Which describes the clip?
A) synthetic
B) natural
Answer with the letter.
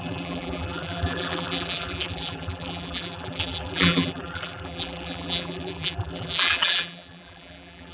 A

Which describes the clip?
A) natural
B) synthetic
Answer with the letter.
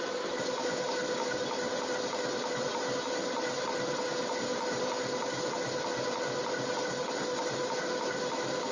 A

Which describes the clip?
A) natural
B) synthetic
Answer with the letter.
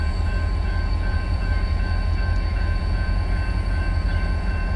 B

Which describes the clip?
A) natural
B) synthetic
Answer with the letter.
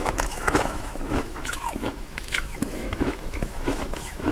B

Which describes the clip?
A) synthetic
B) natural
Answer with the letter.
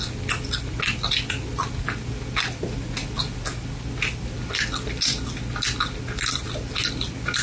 B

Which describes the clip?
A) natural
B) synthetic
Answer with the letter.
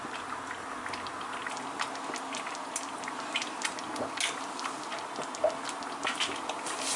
A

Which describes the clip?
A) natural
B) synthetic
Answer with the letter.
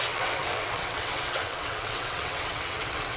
B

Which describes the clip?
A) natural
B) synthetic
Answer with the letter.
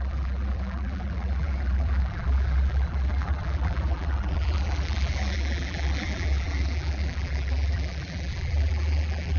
B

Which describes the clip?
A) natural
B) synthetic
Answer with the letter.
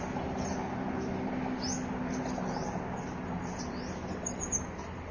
A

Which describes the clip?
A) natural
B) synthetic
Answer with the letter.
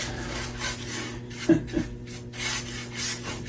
A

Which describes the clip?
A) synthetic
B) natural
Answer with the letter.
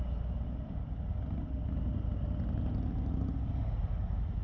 B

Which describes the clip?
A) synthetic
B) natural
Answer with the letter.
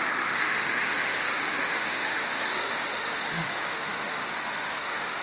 A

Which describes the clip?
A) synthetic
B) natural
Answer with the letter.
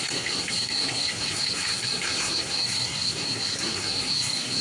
A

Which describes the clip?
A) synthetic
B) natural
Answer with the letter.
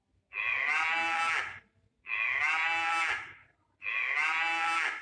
B